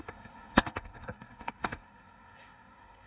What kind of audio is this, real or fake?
fake